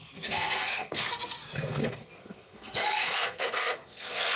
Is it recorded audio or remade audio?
remade